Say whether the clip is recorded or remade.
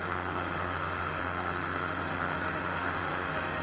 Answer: remade